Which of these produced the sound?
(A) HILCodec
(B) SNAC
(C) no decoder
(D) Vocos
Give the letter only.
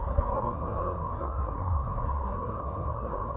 B